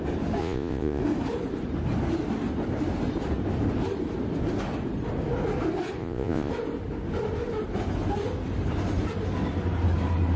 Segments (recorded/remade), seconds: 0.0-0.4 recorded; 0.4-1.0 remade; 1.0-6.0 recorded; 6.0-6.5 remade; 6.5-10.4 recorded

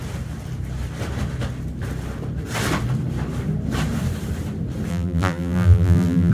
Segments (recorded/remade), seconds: 0.0-4.9 recorded; 4.9-6.3 remade